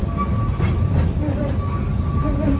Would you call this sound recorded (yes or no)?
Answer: yes